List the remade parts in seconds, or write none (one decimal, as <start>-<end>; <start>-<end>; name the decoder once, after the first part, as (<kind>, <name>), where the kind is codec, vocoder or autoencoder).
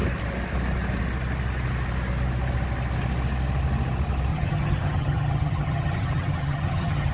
4.3-7.1 (vocoder, HiFi-GAN)